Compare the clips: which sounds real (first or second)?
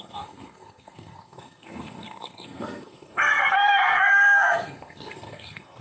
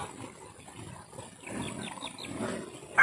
second